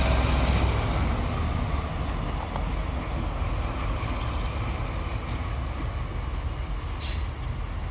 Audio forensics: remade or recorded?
recorded